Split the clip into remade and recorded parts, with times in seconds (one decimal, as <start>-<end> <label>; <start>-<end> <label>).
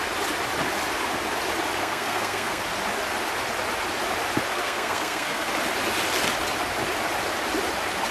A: 0.0-1.8 recorded; 1.8-2.6 remade; 2.6-4.5 recorded; 4.5-5.5 remade; 5.5-8.1 recorded